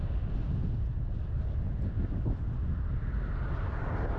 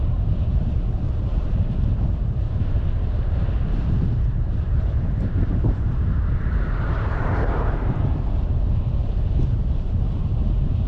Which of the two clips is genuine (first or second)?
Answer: first